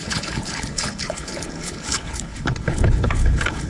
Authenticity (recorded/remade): remade